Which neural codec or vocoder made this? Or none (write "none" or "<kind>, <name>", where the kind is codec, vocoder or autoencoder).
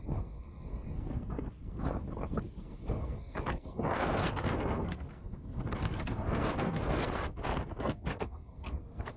codec, SNAC